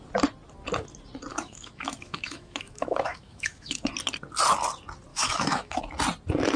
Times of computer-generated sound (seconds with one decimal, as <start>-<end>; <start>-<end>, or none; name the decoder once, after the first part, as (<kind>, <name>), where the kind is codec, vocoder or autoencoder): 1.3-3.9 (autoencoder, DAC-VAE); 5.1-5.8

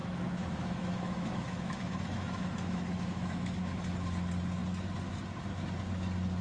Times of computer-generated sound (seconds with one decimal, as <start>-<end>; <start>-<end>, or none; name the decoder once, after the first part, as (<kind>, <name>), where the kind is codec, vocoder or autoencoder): 0.0-3.8 (autoencoder, DAC-VAE)

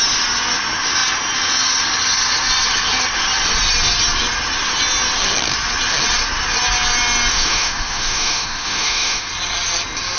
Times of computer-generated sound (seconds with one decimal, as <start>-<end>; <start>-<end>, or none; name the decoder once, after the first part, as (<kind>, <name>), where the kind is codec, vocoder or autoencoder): 7.3-9.3 (autoencoder, DAC-VAE)

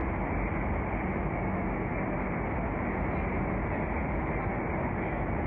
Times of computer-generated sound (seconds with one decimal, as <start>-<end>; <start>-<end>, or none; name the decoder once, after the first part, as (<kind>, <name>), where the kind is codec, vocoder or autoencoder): 1.1-1.9 (autoencoder, DAC-VAE); 5.1-5.5

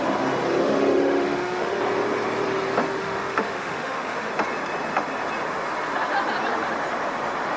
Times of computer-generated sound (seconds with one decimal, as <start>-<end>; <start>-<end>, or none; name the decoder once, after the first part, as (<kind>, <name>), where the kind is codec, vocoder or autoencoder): 0.6-1.8 (autoencoder, DAC-VAE); 3.0-4.3

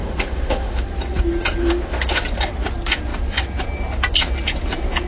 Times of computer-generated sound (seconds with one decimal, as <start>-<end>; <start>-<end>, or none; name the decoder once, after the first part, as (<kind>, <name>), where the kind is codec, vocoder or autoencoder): 0.0-0.8 (autoencoder, DAC-VAE); 1.6-2.2